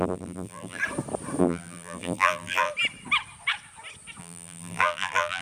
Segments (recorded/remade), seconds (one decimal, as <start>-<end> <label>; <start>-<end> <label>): 0.0-0.8 remade; 0.8-1.4 recorded; 1.4-2.7 remade; 2.7-4.2 recorded; 4.2-5.4 remade